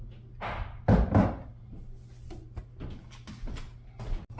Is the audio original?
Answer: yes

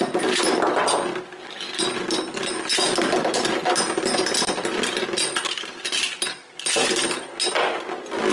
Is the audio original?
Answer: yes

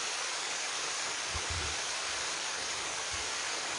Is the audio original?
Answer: no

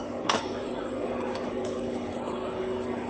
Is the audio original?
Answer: no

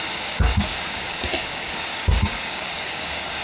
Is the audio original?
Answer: no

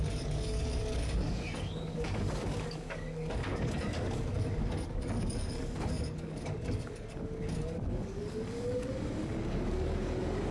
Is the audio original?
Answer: no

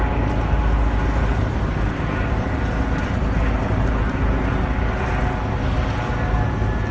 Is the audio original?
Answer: yes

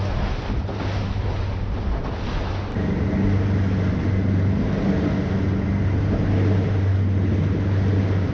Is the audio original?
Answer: yes